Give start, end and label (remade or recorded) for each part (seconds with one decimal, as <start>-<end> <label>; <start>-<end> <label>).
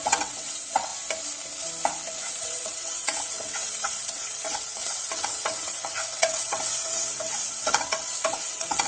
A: 0.0-0.9 remade; 0.9-2.3 recorded; 2.3-8.9 remade